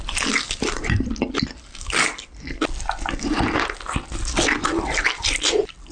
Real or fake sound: real